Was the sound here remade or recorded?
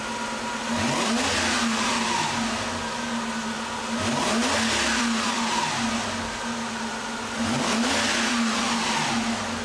recorded